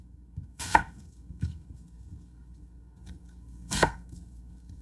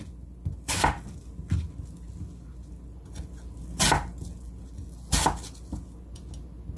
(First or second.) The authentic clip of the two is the second